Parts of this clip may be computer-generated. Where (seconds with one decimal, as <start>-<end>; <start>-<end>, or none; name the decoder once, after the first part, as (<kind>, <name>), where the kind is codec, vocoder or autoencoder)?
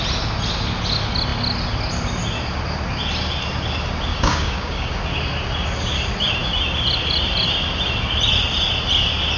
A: 4.1-4.9 (codec, DAC)